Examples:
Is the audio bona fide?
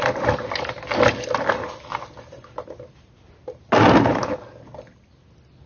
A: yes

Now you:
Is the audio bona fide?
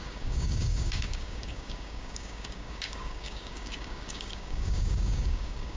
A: no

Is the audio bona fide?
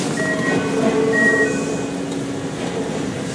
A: yes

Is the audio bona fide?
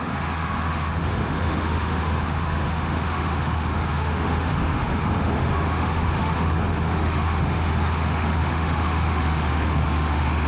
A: no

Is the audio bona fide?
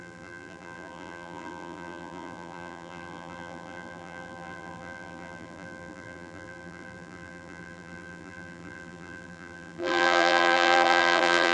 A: no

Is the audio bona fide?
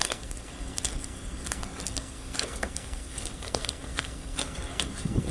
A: no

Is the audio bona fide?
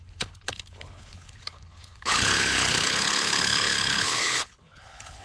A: no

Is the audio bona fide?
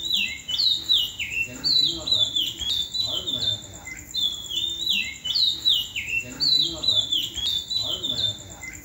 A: yes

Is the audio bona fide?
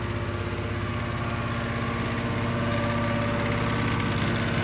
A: yes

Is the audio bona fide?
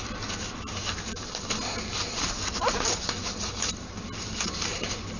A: yes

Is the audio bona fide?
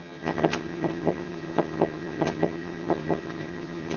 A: no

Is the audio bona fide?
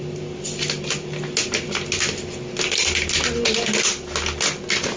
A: yes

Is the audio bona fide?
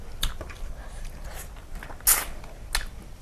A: yes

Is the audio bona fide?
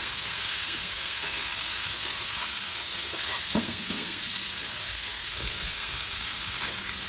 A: no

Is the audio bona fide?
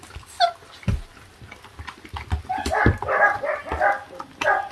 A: yes